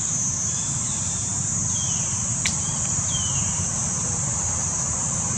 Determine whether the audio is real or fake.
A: fake